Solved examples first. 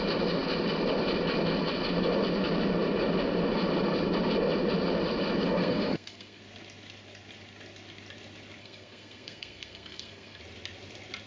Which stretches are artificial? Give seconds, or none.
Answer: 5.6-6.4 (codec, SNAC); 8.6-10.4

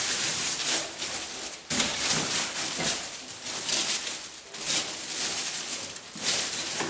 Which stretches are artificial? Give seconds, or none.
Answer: 1.9-3.5 (vocoder, BigVGAN v2)

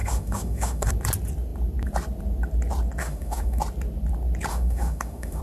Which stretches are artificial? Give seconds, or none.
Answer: 0.0-0.9 (autoencoder, DAC-VAE); 3.0-3.6; 4.5-5.4

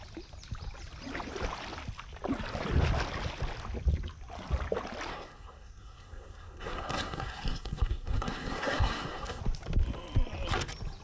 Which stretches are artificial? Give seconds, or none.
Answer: 5.1-9.4 (codec, SNAC)

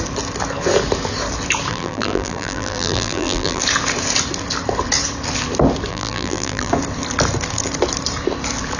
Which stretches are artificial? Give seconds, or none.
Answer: 1.7-3.6 (vocoder, BigVGAN v2); 5.9-6.7

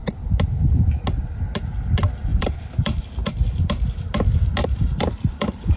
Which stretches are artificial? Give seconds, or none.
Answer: 2.3-3.0 (vocoder, BigVGAN v2); 4.6-5.8